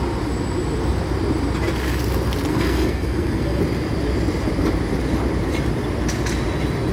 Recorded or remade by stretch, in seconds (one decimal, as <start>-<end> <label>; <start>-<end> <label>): 0.0-2.5 recorded; 2.5-3.6 remade; 3.6-6.9 recorded